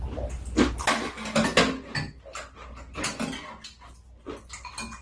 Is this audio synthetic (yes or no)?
no